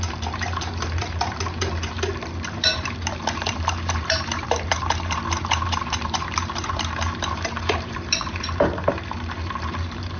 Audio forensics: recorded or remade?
remade